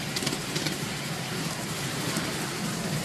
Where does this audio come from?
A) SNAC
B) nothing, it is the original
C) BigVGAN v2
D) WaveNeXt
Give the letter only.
B